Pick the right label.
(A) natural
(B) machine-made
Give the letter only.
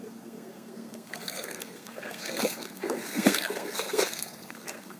B